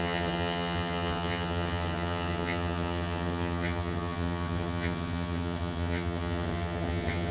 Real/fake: fake